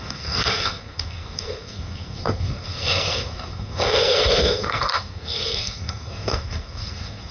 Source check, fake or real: fake